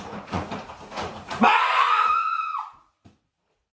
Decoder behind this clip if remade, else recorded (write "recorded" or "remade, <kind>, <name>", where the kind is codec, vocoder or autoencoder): remade, vocoder, Vocos